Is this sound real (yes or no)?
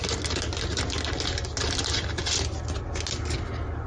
yes